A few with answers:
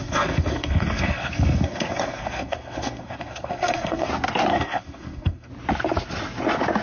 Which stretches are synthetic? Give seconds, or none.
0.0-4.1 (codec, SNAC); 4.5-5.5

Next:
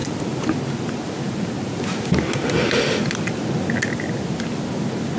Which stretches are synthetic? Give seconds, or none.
none

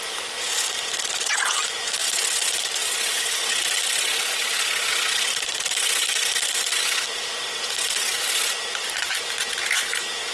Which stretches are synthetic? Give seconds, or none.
none

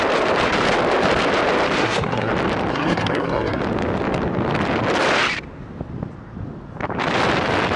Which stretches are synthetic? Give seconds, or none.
1.8-2.3 (codec, SNAC); 2.7-3.6

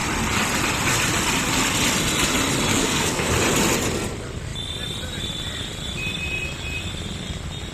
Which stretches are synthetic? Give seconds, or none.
2.7-3.3 (codec, SNAC)